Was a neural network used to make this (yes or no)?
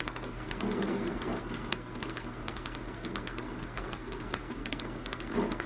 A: yes